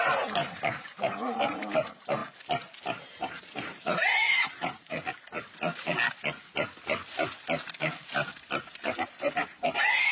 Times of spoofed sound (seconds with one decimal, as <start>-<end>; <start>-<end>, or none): 0.0-2.2; 3.1-4.9; 8.6-10.1